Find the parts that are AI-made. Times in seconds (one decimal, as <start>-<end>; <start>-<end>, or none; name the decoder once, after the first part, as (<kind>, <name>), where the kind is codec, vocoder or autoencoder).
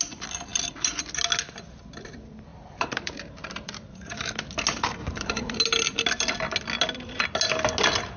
2.5-4.3 (vocoder, BigVGAN v2); 5.0-5.6